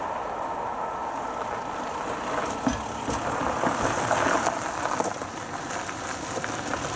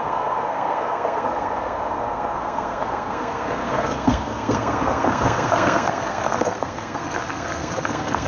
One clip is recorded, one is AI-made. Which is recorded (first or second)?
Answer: first